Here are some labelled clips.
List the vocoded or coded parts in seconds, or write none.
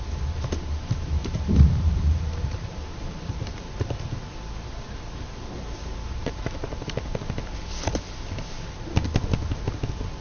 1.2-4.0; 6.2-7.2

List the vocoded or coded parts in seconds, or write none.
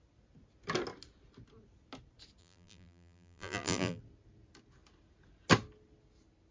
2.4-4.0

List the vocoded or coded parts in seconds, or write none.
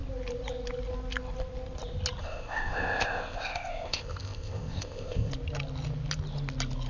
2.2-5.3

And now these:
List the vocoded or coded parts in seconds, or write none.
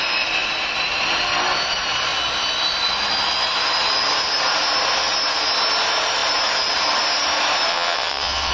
7.7-8.5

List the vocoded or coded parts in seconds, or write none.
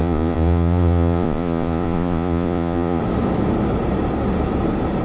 0.0-3.0